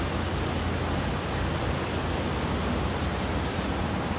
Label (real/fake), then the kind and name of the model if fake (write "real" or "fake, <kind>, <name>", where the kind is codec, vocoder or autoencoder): real